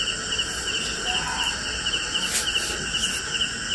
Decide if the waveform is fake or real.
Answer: real